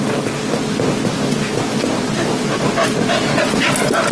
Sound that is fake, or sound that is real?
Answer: real